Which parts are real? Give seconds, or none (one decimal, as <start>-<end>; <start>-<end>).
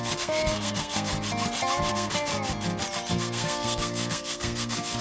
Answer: 1.1-1.9; 2.3-3.1